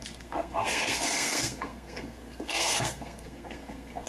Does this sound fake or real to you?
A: fake